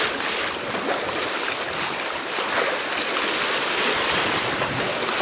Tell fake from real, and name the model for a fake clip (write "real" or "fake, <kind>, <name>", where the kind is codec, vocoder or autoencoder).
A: real